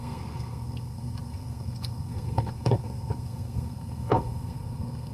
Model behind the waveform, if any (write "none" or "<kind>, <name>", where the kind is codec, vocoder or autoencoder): codec, SNAC